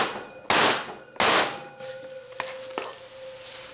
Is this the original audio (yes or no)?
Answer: yes